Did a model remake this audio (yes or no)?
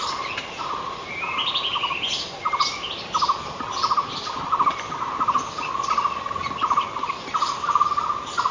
no